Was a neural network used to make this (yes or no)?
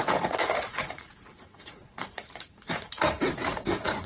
yes